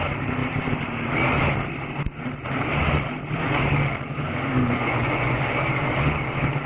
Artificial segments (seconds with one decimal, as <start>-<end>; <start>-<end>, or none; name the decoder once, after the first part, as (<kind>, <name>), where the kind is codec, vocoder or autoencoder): 4.6-5.4 (vocoder, Vocos)

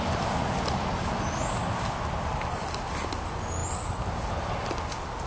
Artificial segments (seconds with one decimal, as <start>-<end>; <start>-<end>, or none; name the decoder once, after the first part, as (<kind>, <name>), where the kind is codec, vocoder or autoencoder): none

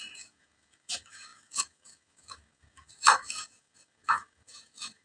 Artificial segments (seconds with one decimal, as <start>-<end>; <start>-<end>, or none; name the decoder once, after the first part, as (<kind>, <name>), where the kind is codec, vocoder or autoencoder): 0.0-5.0 (autoencoder, DAC-VAE)

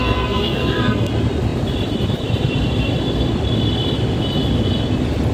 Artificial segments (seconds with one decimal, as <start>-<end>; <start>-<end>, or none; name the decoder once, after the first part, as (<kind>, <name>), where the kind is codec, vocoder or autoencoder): 0.0-1.1 (codec, SNAC)

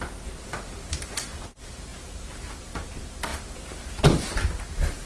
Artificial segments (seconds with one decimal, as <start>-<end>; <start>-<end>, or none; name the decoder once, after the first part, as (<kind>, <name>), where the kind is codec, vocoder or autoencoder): 0.0-5.1 (vocoder, BigVGAN v2)